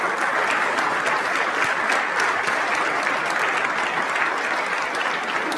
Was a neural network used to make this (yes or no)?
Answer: no